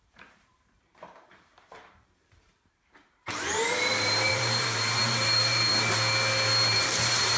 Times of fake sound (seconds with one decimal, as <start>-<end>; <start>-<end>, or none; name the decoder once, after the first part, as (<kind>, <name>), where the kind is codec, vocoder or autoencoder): 0.0-5.7 (vocoder, BigVGAN v2); 6.7-7.4